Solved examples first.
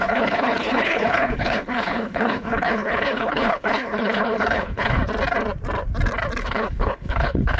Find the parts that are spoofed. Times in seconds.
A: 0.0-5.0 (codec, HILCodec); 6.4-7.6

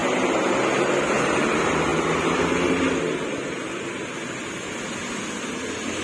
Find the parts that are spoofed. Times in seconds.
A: none

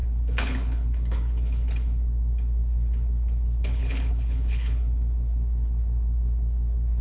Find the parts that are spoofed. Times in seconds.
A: 0.0-7.0 (codec, HILCodec)

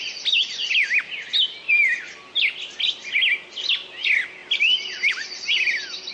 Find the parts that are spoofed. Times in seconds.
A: none

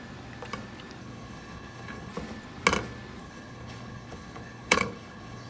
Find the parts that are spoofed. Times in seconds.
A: 1.0-2.1 (codec, HILCodec); 3.2-5.5